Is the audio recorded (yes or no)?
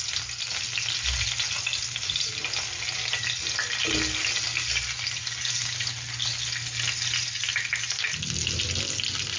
yes